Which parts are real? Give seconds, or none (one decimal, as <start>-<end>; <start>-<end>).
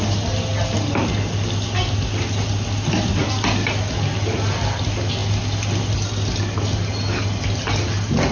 0.0-8.3